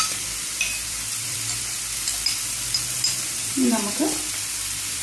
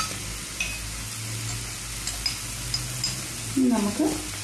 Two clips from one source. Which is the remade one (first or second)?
first